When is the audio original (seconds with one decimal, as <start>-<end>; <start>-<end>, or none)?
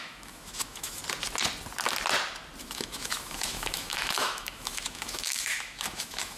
1.0-2.6